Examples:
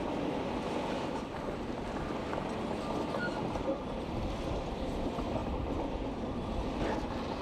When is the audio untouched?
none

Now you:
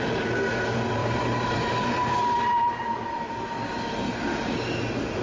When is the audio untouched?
0.0-1.0; 3.3-5.2

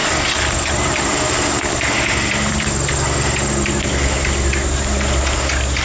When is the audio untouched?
3.5-5.8

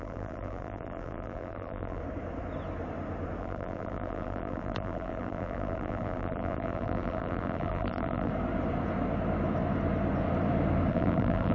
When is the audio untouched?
2.0-3.4; 8.3-10.9

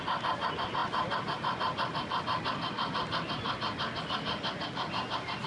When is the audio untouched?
0.0-5.5

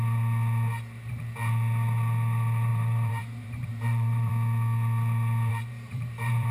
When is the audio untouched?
0.0-2.7; 4.3-5.5

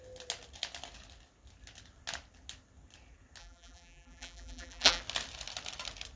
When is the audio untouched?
0.0-3.4; 5.0-6.2

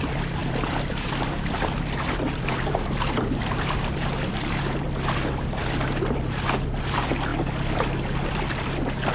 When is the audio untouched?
0.0-0.4; 5.5-9.1